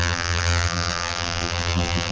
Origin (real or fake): fake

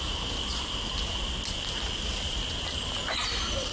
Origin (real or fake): real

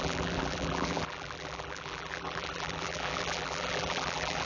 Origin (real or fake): fake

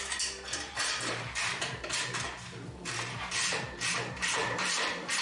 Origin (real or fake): fake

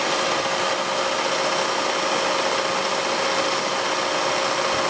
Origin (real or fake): real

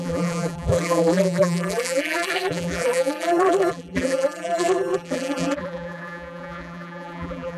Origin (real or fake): fake